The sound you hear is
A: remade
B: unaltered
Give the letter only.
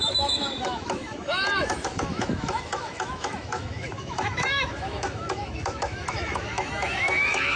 A